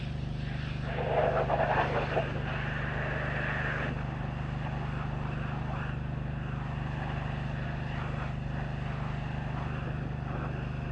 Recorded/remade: recorded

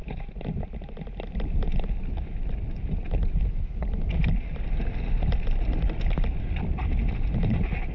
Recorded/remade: recorded